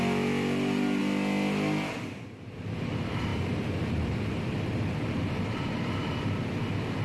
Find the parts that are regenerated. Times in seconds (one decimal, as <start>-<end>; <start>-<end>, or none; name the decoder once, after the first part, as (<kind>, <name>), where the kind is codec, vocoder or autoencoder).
0.0-1.0 (vocoder, BigVGAN v2); 2.6-7.0